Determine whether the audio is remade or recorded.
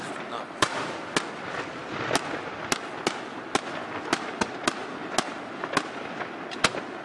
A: recorded